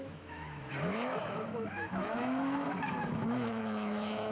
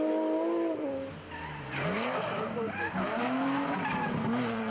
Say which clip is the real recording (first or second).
second